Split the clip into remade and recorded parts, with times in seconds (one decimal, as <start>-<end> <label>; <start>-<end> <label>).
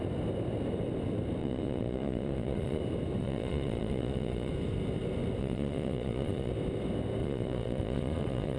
0.0-1.4 recorded; 1.4-2.8 remade; 2.8-3.2 recorded; 3.2-4.5 remade; 4.5-5.4 recorded; 5.4-6.5 remade; 6.5-7.2 recorded; 7.2-8.6 remade